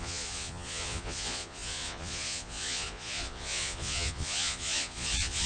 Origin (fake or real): fake